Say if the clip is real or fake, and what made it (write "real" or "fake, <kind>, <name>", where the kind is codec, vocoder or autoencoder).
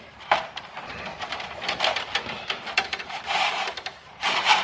fake, vocoder, BigVGAN v2